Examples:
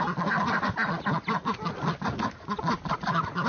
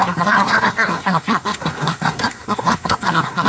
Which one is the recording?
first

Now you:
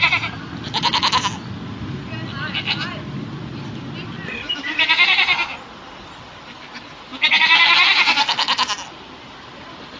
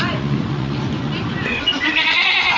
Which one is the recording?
first